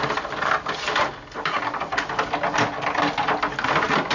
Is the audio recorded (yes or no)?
yes